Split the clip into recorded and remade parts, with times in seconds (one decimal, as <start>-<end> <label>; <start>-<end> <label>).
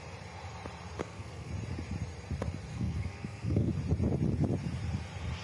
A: 0.0-1.0 recorded; 1.0-1.5 remade; 1.5-2.7 recorded; 2.7-3.7 remade; 3.7-5.4 recorded